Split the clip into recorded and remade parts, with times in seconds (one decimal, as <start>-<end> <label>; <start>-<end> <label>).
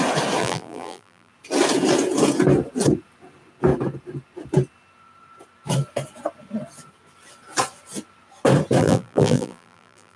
0.0-0.4 recorded; 0.4-1.3 remade; 1.3-8.8 recorded; 8.8-10.2 remade